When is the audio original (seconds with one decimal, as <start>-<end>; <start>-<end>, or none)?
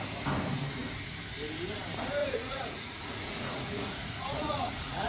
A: 0.0-2.2